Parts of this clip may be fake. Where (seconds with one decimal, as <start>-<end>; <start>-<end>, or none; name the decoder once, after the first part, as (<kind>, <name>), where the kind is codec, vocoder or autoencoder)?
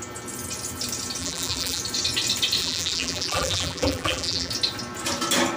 1.2-1.8 (vocoder, BigVGAN v2); 2.6-4.5